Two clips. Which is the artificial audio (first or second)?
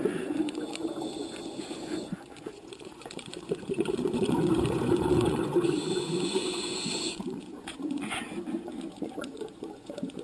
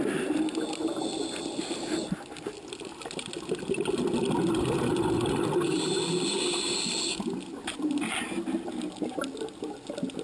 first